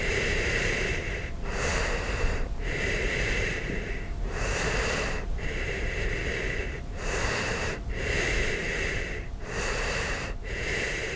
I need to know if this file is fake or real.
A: fake